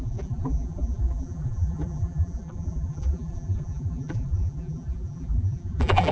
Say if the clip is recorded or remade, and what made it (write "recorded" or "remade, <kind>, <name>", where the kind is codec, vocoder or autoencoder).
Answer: remade, vocoder, BigVGAN v2